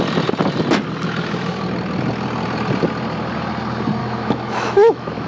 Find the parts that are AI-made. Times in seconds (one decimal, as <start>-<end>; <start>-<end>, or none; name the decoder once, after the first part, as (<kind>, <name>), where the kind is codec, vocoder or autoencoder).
4.0-5.3 (autoencoder, DAC-VAE)